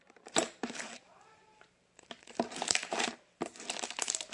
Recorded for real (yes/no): no